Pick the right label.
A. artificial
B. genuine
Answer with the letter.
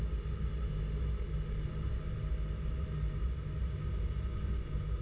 B